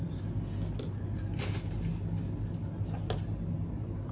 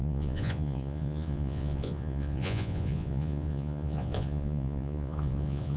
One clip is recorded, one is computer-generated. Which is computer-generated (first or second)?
second